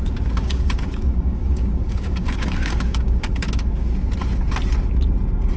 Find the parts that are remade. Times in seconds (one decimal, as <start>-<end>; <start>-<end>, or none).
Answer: 0.4-3.8